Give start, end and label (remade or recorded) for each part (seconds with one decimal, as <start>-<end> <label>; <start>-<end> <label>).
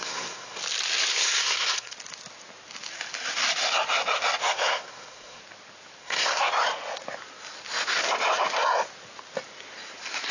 0.0-0.6 remade; 0.6-1.1 recorded; 1.1-1.9 remade; 1.9-4.4 recorded; 4.4-5.4 remade; 5.4-6.0 recorded; 6.0-6.5 remade; 6.5-10.3 recorded